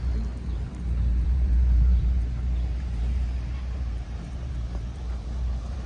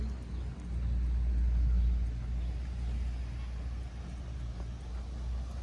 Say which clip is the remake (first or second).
first